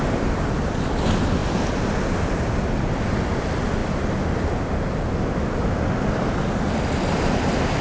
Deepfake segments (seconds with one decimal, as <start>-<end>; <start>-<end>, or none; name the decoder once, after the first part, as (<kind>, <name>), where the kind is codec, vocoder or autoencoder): none